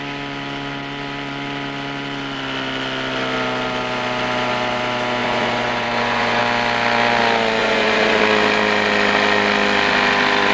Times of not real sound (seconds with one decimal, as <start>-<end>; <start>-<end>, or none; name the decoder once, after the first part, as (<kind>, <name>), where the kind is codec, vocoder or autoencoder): 5.2-6.4 (vocoder, Vocos); 7.6-8.2